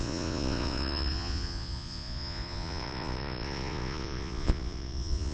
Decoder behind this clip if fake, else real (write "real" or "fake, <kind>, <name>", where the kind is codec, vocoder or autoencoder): fake, vocoder, Vocos